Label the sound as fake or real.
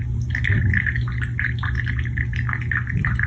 real